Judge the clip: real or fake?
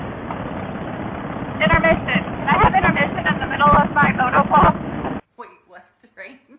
real